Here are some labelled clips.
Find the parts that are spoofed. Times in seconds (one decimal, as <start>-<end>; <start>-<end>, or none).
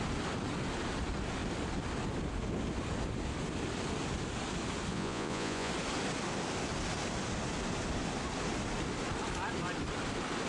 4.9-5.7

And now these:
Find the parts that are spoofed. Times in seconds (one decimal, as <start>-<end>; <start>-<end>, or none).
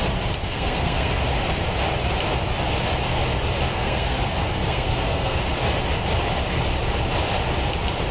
0.5-1.1; 3.7-5.4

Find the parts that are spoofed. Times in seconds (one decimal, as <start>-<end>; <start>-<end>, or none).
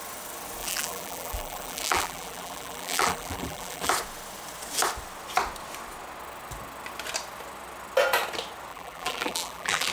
0.6-3.9; 8.7-9.9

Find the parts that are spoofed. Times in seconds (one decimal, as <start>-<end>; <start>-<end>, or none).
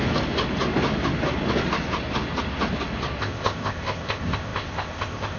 3.2-5.4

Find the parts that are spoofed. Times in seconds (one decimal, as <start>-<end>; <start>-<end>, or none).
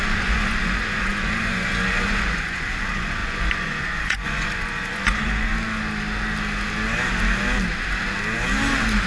0.0-5.5